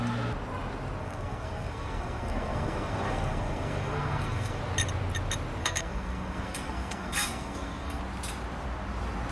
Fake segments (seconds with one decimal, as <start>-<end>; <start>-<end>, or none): 1.0-4.6; 5.6-8.0